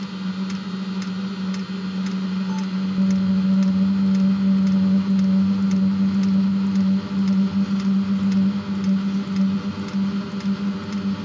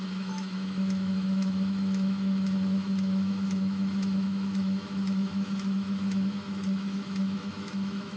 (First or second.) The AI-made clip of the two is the second